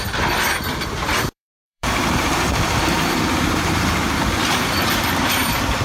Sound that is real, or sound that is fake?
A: fake